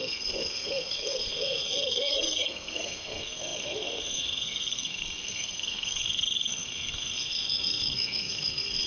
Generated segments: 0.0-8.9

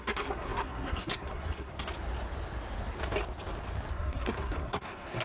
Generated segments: 0.0-1.7; 3.9-5.2

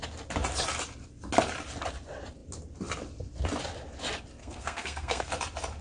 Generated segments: 4.4-5.3

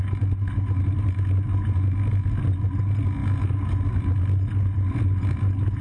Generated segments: none